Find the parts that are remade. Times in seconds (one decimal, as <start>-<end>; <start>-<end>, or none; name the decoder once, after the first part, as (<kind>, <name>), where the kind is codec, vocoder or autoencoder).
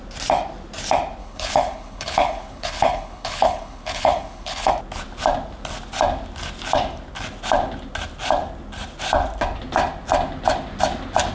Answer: 1.2-4.7 (codec, HILCodec)